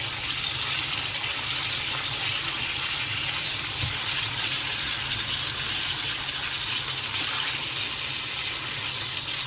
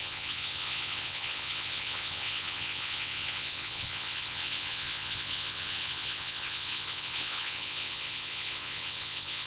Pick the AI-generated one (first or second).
second